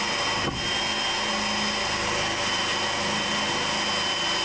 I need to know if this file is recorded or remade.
recorded